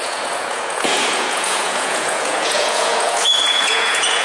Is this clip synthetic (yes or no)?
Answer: yes